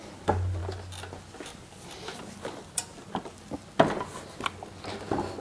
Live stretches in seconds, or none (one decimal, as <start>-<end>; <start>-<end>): 0.0-5.4